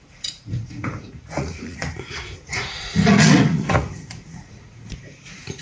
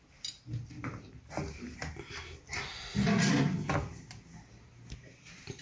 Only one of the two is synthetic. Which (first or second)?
first